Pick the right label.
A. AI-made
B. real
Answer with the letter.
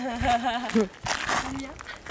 B